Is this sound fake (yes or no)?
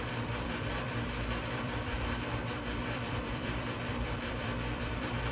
yes